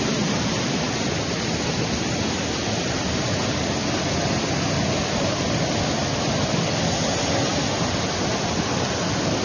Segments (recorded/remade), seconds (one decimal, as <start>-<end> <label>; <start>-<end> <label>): 0.0-9.4 recorded